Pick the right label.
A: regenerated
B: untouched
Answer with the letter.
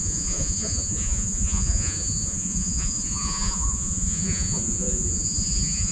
A